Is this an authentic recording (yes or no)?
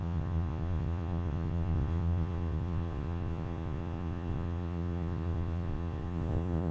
no